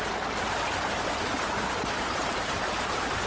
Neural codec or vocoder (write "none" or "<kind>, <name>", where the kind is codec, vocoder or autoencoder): vocoder, BigVGAN v2